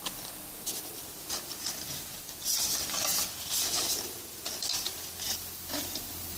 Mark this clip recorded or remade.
remade